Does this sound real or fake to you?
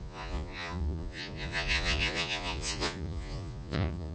fake